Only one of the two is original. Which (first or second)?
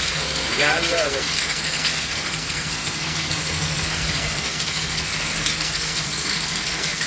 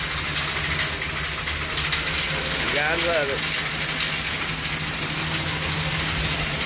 second